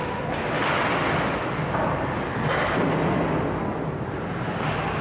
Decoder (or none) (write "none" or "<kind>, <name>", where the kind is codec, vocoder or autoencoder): none